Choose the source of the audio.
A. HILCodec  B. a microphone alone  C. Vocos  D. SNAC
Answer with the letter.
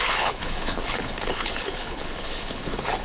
A